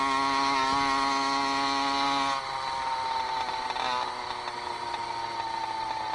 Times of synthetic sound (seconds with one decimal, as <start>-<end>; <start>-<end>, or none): none